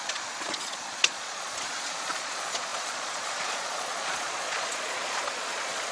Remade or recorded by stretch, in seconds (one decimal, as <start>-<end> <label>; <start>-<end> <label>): 0.0-5.9 remade

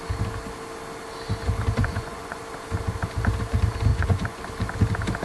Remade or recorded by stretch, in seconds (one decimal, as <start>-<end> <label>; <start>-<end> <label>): 0.0-1.8 recorded; 1.8-2.4 remade; 2.4-3.9 recorded; 3.9-4.4 remade; 4.4-5.2 recorded

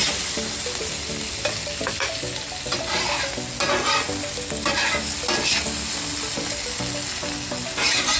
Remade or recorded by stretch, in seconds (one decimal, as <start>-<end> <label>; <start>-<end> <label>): 0.0-8.2 recorded

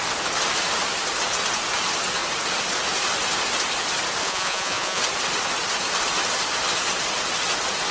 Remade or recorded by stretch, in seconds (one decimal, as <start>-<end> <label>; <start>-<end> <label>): 0.0-4.2 recorded; 4.2-5.0 remade; 5.0-7.9 recorded

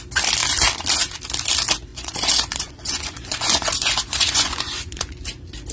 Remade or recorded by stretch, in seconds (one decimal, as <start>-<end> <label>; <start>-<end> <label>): 0.0-1.9 recorded; 1.9-5.2 remade; 5.2-5.7 recorded

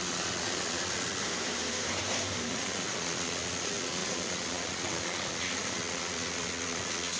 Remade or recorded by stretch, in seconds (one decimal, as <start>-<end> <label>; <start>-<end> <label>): 0.0-1.2 remade; 1.2-2.5 recorded; 2.5-7.2 remade

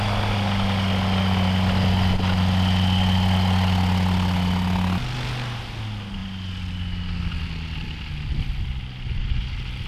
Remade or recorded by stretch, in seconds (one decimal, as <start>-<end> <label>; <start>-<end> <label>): 0.0-9.9 recorded

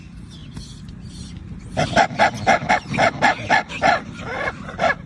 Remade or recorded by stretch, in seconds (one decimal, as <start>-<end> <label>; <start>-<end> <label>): 0.0-5.1 recorded